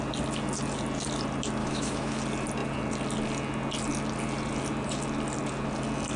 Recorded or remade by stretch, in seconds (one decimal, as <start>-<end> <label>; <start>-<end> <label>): 0.0-1.6 recorded; 1.6-2.2 remade; 2.2-6.2 recorded